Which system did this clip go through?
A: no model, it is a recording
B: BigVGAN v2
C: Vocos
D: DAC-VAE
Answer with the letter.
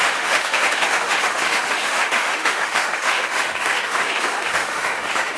D